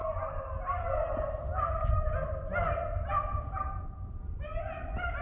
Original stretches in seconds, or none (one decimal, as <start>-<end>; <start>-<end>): 0.0-5.2

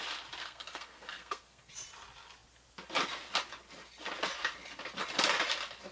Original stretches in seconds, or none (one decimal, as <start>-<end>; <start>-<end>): 0.0-0.4; 1.7-5.9

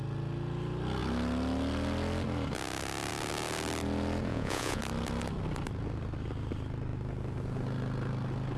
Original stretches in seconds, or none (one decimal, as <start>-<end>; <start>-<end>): 0.0-4.3; 4.8-8.6

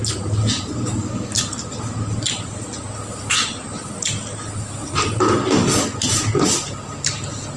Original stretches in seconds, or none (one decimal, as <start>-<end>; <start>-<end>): 0.0-1.0; 1.5-7.6